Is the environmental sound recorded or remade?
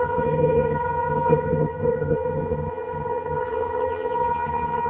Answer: remade